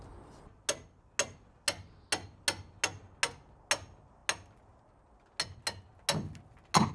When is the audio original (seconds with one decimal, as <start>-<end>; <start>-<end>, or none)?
0.0-6.9